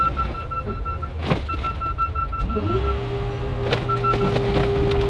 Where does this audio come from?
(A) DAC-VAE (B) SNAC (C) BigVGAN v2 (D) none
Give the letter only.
D